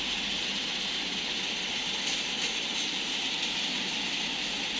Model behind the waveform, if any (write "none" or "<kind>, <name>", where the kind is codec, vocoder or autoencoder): none